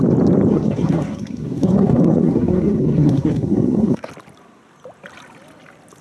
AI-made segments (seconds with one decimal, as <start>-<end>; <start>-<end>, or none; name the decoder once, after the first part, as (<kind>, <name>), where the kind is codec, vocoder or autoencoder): 0.5-4.1 (codec, SNAC)